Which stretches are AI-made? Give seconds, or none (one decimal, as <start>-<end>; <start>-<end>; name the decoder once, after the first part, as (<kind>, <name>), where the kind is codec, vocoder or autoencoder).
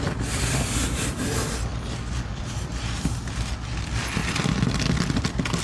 none